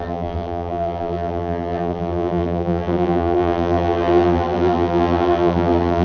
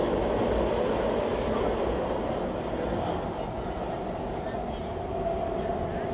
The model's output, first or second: first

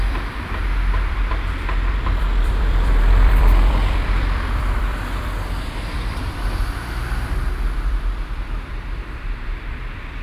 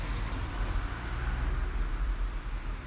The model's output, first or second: first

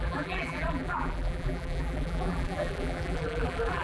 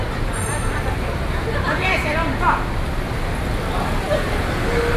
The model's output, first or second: first